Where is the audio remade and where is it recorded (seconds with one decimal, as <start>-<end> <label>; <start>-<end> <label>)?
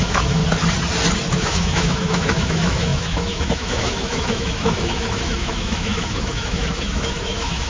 0.0-0.4 remade; 0.4-1.3 recorded; 1.3-7.7 remade